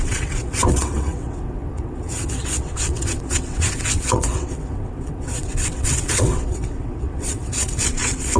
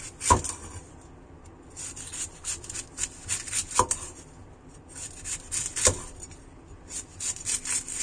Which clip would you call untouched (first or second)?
second